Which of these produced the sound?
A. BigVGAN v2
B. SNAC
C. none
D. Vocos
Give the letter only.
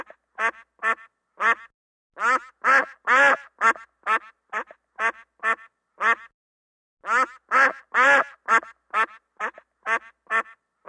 C